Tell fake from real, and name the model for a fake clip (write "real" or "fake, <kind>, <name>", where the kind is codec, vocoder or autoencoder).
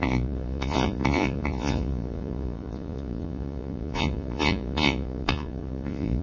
fake, vocoder, Vocos